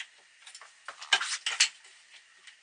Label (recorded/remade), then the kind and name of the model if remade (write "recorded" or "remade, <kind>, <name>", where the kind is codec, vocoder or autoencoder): recorded